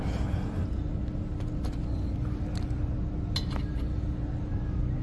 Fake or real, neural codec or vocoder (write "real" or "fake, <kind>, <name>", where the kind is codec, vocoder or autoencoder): real